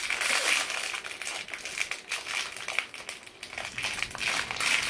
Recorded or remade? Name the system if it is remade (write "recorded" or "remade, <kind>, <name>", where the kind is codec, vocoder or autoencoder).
recorded